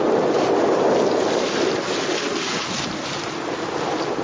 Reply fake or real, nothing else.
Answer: real